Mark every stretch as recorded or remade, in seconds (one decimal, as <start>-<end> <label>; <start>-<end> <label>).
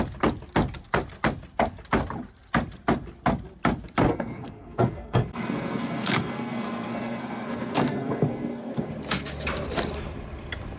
0.0-4.1 recorded; 4.1-8.9 remade; 8.9-10.8 recorded